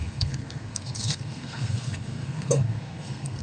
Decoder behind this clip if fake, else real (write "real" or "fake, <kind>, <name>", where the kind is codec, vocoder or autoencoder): fake, codec, SNAC